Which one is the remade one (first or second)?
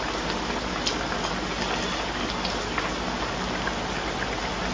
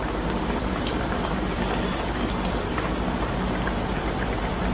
second